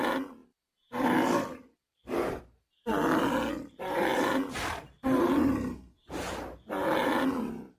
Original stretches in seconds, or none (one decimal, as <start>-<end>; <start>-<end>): 0.0-7.8